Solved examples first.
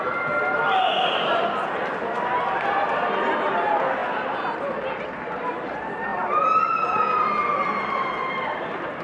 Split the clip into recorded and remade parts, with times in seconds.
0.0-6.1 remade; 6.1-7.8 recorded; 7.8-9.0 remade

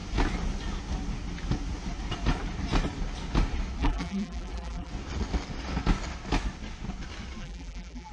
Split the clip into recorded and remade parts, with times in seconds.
0.0-3.8 recorded; 3.8-4.9 remade; 4.9-7.4 recorded; 7.4-8.1 remade

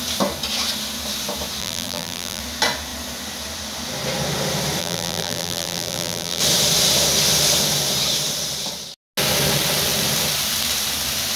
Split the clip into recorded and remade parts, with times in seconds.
0.0-1.6 recorded; 1.6-2.4 remade; 2.4-4.8 recorded; 4.8-6.4 remade; 6.4-11.4 recorded

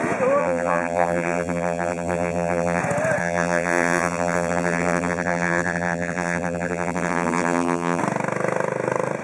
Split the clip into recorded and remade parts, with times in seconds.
0.0-0.4 recorded; 0.4-2.8 remade; 2.8-3.2 recorded; 3.2-8.0 remade; 8.0-9.2 recorded

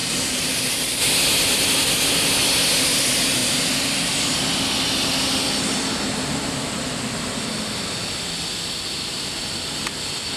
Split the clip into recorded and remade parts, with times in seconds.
0.0-1.0 remade; 1.0-10.4 recorded

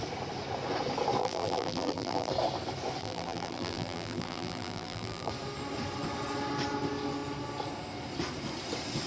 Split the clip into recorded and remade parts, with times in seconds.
0.0-1.2 recorded; 1.2-2.3 remade; 2.3-3.0 recorded; 3.0-5.3 remade; 5.3-9.1 recorded

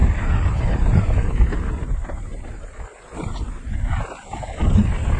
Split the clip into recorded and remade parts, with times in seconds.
0.0-5.2 recorded

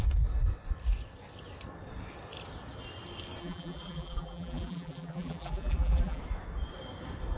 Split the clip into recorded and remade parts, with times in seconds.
0.0-3.4 recorded; 3.4-6.2 remade; 6.2-7.4 recorded